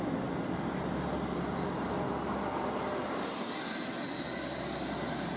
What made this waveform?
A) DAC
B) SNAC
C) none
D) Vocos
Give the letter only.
C